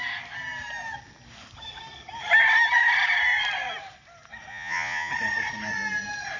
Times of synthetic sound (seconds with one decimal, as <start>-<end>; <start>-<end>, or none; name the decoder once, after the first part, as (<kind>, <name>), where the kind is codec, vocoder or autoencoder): 4.5-5.1 (vocoder, Vocos)